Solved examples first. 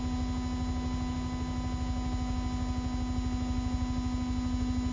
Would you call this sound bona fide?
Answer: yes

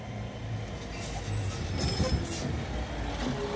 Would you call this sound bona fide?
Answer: yes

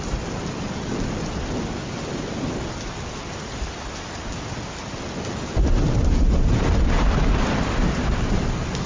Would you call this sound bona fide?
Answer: yes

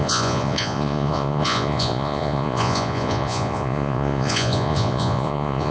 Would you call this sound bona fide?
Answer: no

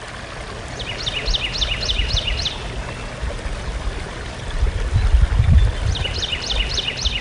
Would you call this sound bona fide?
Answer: yes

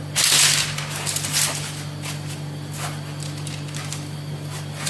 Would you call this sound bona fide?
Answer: yes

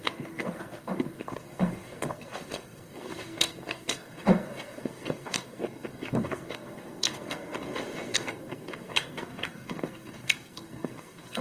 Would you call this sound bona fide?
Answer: no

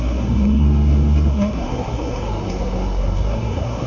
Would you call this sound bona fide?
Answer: no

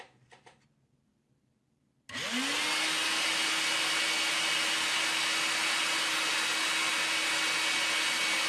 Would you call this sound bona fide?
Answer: yes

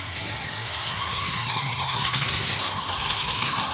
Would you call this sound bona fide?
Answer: no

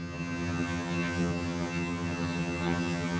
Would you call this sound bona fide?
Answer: no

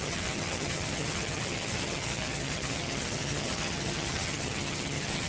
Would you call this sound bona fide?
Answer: no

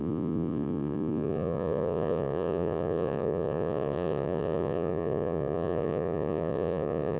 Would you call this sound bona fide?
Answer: no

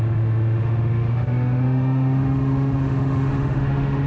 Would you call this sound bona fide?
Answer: no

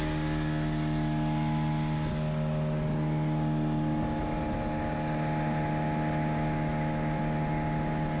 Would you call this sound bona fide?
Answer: yes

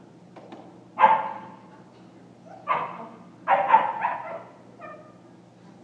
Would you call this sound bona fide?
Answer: yes